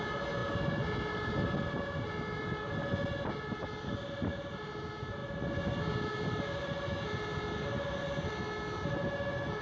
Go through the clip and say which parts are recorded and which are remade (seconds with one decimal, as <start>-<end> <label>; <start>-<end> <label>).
0.0-9.6 recorded